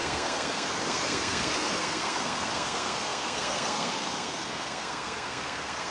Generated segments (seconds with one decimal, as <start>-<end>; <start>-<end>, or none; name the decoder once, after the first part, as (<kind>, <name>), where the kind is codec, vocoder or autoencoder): 0.0-5.9 (codec, SNAC)